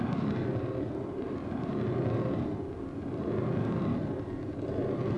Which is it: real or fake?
real